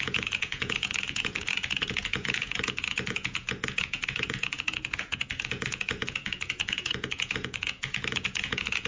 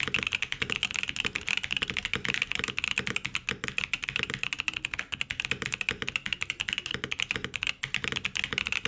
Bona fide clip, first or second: second